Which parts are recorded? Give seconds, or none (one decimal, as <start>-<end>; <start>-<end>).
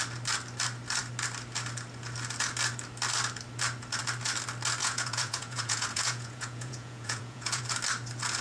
0.0-4.8; 7.6-8.4